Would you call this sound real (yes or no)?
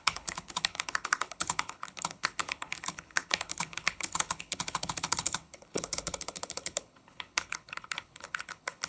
no